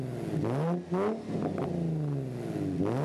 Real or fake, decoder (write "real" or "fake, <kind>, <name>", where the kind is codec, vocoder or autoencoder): real